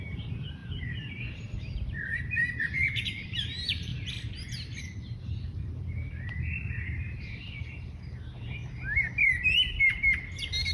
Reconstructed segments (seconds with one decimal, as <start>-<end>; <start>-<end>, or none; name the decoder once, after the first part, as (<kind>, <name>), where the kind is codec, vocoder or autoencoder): 0.0-3.9 (vocoder, BigVGAN v2); 4.8-8.6; 9.3-10.7